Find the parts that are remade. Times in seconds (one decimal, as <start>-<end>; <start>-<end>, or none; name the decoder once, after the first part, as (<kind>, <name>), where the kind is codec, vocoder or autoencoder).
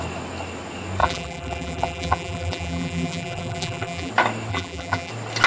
1.0-4.1 (vocoder, BigVGAN v2); 4.5-5.1